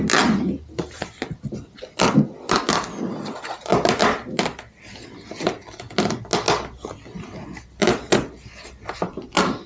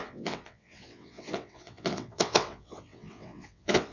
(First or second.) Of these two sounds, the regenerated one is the second